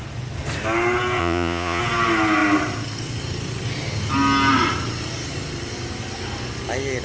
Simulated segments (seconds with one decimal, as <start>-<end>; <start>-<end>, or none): 1.2-1.8